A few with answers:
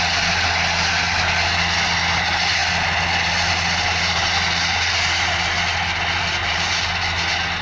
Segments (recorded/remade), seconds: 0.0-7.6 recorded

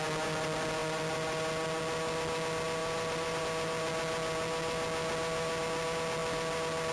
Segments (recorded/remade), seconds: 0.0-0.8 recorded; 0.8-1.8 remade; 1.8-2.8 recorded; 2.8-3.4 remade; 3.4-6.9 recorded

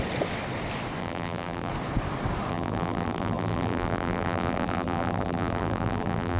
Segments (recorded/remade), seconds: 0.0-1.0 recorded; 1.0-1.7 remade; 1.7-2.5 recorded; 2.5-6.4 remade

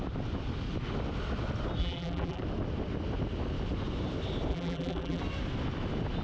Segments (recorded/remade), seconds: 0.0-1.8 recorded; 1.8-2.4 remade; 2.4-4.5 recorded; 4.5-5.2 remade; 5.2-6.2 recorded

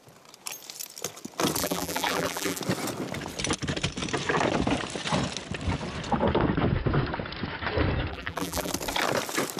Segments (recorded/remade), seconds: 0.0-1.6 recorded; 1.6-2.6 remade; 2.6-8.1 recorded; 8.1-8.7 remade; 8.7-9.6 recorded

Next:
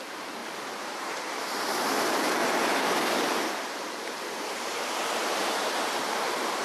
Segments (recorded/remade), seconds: 0.0-2.4 remade; 2.4-3.2 recorded; 3.2-5.4 remade; 5.4-6.0 recorded; 6.0-6.6 remade